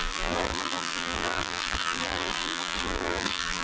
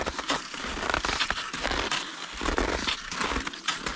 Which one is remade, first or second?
first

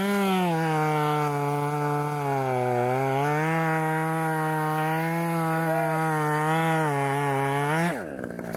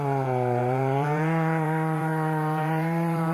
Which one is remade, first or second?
second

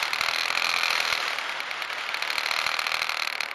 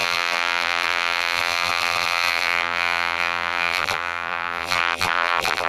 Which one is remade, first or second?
second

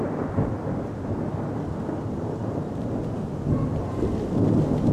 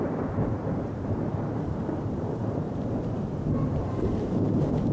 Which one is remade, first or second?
second